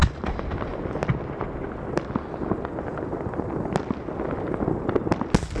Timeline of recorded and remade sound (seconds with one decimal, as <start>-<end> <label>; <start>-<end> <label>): 0.0-5.6 recorded